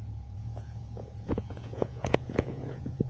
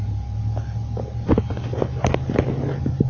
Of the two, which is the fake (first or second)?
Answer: first